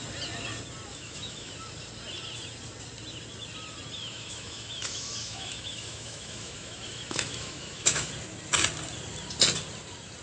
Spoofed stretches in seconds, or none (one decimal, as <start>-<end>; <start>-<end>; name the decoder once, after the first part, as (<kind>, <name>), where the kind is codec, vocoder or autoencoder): 0.9-1.5 (autoencoder, DAC-VAE); 4.0-8.1